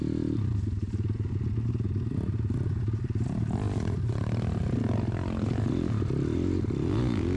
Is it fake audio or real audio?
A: real